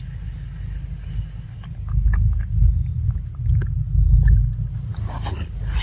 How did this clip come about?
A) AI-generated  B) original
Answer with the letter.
B